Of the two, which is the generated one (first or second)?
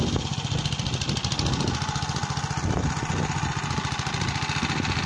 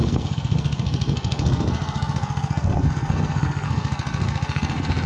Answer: second